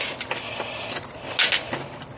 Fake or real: real